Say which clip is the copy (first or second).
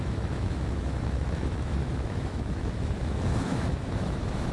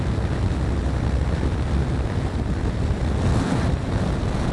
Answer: first